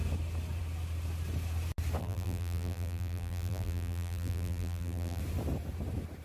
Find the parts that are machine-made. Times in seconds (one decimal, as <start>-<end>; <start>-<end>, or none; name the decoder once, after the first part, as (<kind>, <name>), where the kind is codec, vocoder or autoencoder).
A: 2.0-5.2 (vocoder, BigVGAN v2)